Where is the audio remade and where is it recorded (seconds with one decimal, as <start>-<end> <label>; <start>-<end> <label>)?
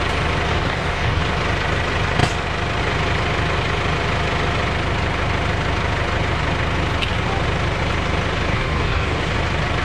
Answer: 0.0-0.5 recorded; 0.5-1.2 remade; 1.2-8.5 recorded; 8.5-9.2 remade; 9.2-9.8 recorded